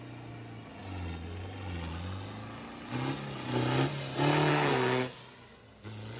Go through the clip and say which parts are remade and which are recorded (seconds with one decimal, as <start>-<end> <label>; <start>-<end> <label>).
0.0-4.5 recorded; 4.5-5.2 remade; 5.2-6.2 recorded